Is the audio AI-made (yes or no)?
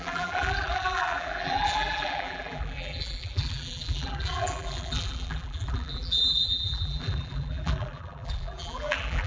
yes